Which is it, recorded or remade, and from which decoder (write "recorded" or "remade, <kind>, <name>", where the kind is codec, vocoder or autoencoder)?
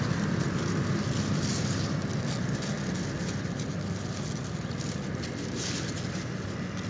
recorded